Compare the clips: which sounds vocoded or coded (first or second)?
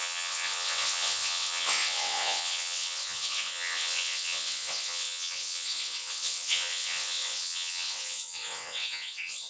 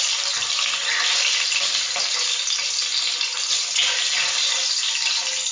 first